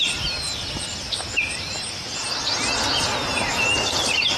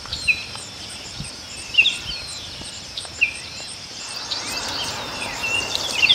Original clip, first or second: first